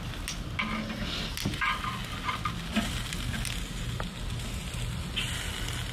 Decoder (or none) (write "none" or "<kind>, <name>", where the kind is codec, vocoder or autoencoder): none